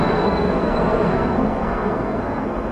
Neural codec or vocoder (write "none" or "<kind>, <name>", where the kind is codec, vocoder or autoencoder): codec, SNAC